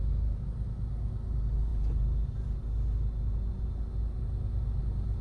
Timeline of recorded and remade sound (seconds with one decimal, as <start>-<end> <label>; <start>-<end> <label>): 0.0-5.2 recorded